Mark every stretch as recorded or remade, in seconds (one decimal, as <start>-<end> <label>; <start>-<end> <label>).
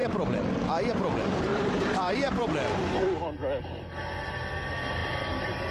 0.0-1.5 recorded; 1.5-2.4 remade; 2.4-5.7 recorded